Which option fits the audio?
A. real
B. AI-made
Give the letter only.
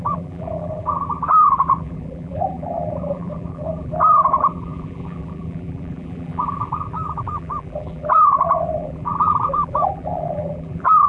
B